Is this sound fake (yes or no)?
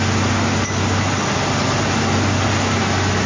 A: no